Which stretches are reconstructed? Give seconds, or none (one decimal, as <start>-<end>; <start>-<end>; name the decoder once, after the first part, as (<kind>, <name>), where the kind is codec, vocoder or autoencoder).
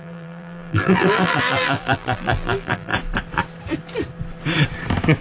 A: 0.0-2.9 (vocoder, BigVGAN v2)